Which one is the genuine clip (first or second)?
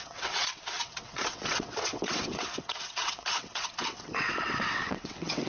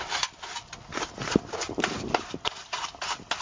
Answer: second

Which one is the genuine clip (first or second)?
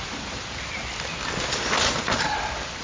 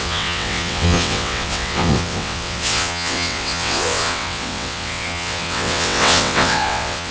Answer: first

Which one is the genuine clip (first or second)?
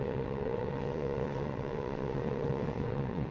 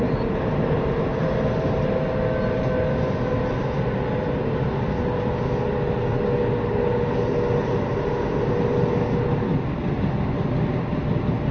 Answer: second